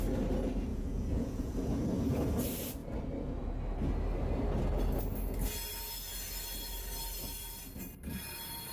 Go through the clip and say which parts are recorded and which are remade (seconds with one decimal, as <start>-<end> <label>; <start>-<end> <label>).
0.0-0.7 recorded; 0.7-1.6 remade; 1.6-8.7 recorded